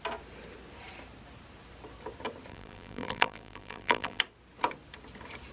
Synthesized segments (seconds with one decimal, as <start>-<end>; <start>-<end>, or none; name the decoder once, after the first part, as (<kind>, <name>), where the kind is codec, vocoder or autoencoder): 2.5-4.2 (vocoder, BigVGAN v2)